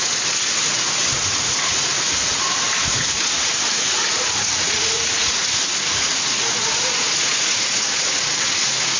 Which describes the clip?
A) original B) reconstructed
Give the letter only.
B